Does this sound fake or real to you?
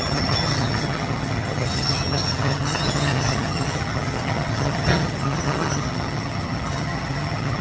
fake